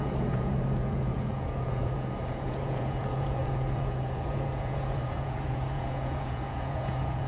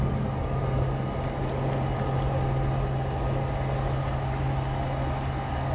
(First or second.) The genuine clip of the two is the second